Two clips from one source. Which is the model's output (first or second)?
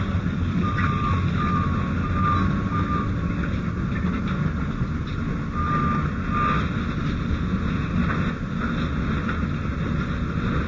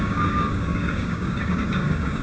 second